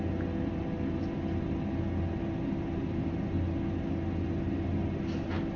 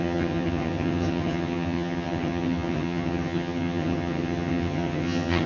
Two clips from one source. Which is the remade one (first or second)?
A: second